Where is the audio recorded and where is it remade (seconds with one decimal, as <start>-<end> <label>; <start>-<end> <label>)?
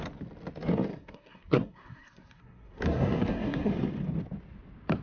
0.0-0.9 recorded; 0.9-3.7 remade; 3.7-5.0 recorded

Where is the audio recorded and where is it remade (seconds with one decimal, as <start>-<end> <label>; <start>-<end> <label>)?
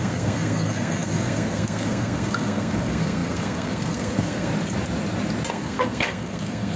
0.0-4.5 remade; 4.5-5.5 recorded; 5.5-6.8 remade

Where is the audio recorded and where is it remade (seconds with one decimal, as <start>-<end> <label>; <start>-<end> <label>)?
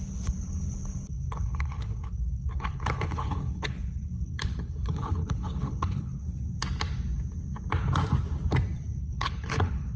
0.0-6.2 remade; 6.2-9.0 recorded; 9.0-10.0 remade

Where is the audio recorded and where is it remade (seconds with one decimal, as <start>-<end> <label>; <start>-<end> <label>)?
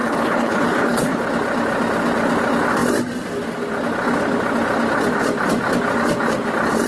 0.0-1.2 remade; 1.2-6.9 recorded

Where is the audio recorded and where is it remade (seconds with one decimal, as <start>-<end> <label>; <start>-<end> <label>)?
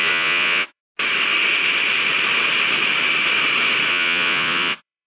0.0-0.8 remade; 0.8-3.9 recorded; 3.9-5.1 remade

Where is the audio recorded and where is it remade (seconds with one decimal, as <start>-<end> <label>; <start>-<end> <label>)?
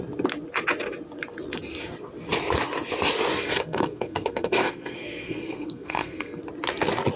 0.0-3.3 recorded; 3.3-6.4 remade; 6.4-7.2 recorded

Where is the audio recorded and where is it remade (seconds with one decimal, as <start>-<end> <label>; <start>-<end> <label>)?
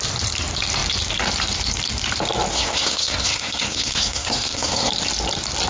0.0-2.5 recorded; 2.5-4.9 remade; 4.9-5.7 recorded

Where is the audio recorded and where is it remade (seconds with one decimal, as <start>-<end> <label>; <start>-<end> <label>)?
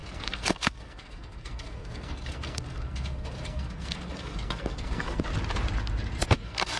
0.0-5.3 remade; 5.3-6.2 recorded; 6.2-6.8 remade